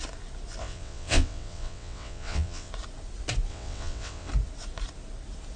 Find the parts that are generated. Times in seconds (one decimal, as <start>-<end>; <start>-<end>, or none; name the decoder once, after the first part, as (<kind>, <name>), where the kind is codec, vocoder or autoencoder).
0.6-2.7 (vocoder, WaveNeXt); 3.5-4.3